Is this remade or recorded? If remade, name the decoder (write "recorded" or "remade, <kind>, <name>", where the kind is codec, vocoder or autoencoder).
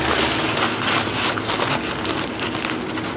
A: recorded